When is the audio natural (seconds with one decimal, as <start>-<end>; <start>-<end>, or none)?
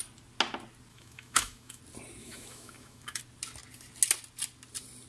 0.0-0.9; 1.8-2.2; 3.2-5.1